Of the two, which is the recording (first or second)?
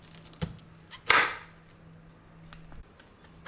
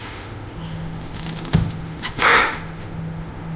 first